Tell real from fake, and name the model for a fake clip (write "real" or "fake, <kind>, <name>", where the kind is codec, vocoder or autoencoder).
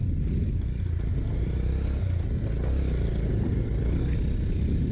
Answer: real